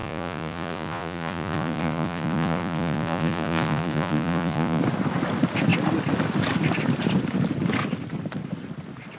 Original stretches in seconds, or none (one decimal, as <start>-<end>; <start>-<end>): 4.8-9.2